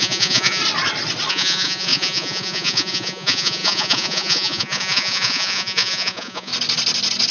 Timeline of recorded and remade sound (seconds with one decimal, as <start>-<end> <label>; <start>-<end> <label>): 0.0-0.6 remade; 0.6-1.3 recorded; 1.3-6.5 remade; 6.5-7.3 recorded